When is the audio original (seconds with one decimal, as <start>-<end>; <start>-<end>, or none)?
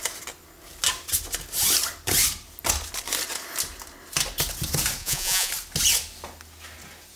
0.0-5.0; 5.5-7.2